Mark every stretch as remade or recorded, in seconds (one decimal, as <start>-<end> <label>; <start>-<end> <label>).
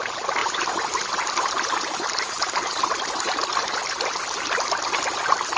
0.0-0.4 recorded; 0.4-3.5 remade; 3.5-5.6 recorded